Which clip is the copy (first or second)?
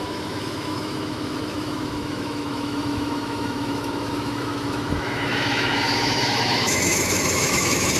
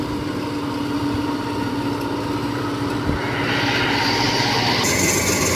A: first